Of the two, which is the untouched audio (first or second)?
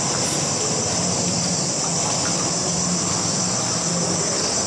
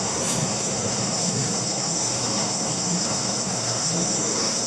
first